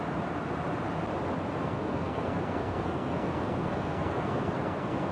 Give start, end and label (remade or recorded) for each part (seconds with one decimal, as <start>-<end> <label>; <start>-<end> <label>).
0.0-1.6 recorded; 1.6-5.1 remade